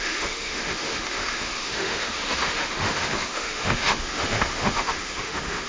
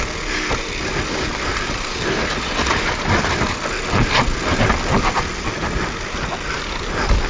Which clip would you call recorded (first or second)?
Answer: second